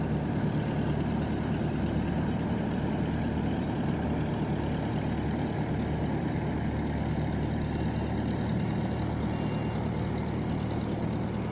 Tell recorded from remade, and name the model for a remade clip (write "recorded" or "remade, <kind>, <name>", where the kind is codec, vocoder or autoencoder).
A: recorded